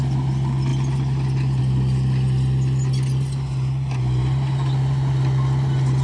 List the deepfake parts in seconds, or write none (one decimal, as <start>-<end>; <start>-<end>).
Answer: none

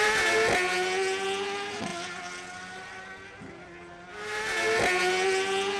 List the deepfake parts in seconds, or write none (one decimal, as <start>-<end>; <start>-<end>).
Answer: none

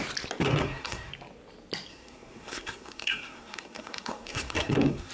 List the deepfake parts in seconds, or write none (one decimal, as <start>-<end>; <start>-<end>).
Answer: 0.4-1.1; 1.9-5.1